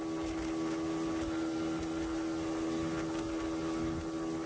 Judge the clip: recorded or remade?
recorded